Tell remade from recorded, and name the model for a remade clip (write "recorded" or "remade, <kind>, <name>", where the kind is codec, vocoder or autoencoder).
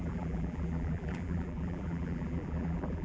remade, vocoder, BigVGAN v2